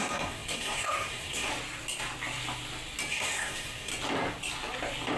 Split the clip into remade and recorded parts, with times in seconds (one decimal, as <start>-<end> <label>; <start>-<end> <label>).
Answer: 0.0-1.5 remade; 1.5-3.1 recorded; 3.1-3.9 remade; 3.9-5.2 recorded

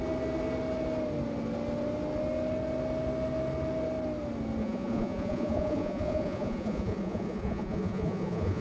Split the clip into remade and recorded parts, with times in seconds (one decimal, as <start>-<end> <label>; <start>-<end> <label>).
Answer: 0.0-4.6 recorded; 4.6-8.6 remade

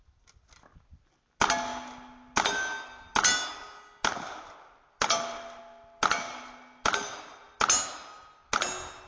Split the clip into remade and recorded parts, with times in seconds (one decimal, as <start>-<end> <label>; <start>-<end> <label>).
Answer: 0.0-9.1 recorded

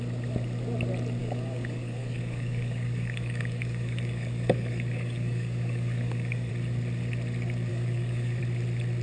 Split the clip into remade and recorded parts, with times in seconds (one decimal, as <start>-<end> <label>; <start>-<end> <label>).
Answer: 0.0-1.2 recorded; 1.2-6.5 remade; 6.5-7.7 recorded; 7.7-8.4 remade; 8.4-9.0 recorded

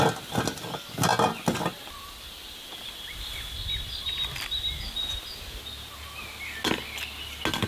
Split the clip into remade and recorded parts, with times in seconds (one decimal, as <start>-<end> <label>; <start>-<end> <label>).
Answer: 0.0-2.6 recorded; 2.6-5.3 remade; 5.3-7.7 recorded

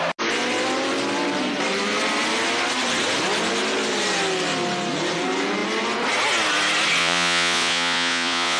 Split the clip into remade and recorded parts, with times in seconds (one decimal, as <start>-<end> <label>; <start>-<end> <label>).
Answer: 0.0-7.0 recorded; 7.0-8.6 remade

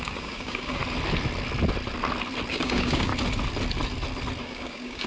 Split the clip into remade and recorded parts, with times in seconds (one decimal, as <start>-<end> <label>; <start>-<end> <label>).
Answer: 0.0-0.8 remade; 0.8-2.5 recorded; 2.5-3.1 remade; 3.1-4.4 recorded; 4.4-5.1 remade